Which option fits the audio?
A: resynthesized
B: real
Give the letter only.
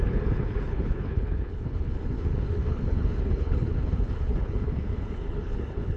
A